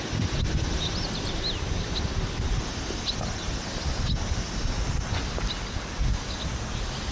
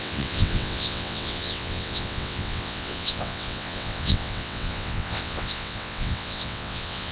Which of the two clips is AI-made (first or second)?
second